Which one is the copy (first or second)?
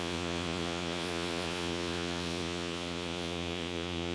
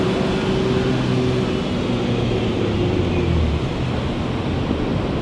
first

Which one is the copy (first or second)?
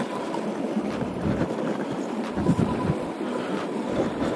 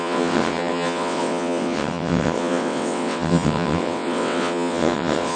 second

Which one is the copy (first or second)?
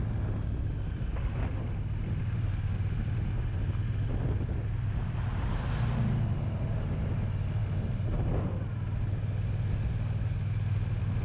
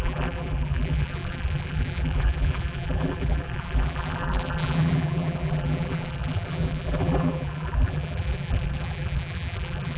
second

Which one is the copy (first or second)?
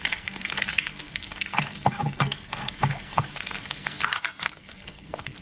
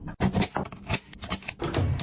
first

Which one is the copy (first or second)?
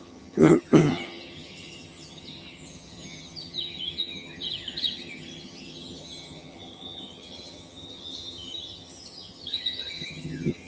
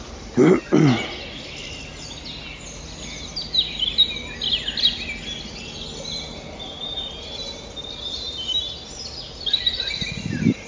first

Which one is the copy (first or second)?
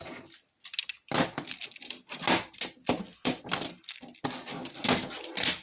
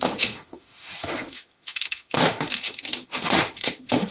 second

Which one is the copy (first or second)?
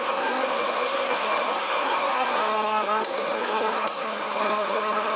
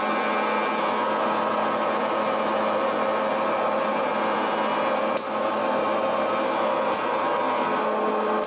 first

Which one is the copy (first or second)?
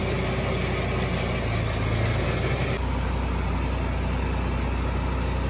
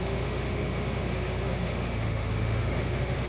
second